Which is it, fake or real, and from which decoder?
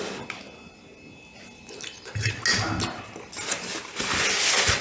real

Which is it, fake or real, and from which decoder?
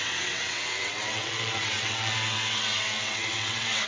fake, vocoder, WaveNeXt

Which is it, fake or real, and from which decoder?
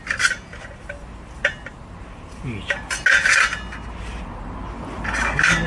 real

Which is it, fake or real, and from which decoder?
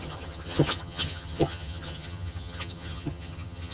fake, vocoder, HiFi-GAN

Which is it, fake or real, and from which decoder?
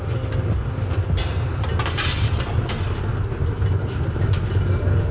real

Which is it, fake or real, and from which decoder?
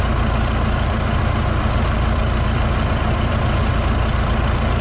real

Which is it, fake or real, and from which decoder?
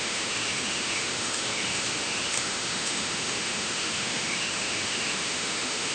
fake, autoencoder, DAC-VAE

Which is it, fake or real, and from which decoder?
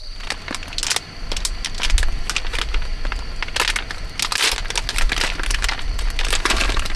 real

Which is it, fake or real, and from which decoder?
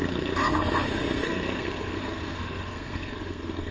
fake, codec, SNAC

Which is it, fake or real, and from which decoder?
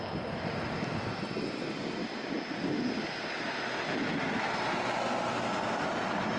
real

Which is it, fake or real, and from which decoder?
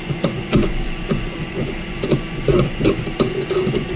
fake, vocoder, Vocos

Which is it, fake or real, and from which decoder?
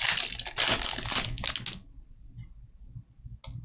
real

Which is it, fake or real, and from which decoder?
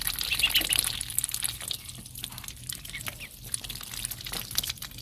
real